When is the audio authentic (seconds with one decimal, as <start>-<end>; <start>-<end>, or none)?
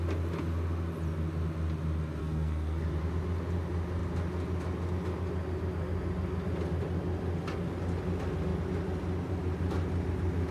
0.0-2.2; 2.8-10.5